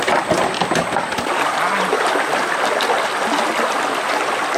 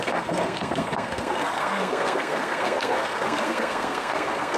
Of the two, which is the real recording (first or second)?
first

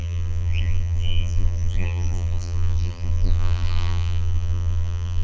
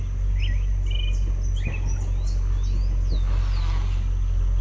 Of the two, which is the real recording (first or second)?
second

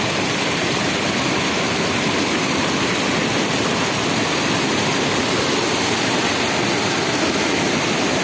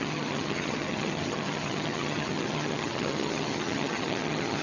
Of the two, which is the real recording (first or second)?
first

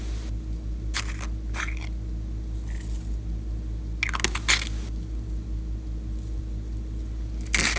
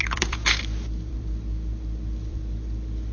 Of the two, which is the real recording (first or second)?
first